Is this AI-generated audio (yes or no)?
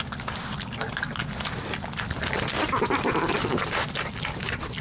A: no